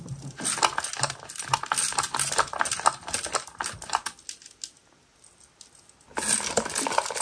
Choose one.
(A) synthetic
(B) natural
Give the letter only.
B